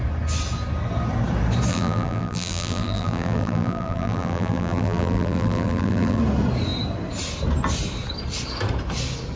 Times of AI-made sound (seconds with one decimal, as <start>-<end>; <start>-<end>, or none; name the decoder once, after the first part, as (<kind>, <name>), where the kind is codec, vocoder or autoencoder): 1.7-6.2 (vocoder, BigVGAN v2)